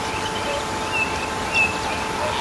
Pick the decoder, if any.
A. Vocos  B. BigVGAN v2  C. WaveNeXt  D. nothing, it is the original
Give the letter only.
D